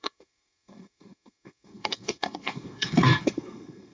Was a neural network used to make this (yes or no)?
yes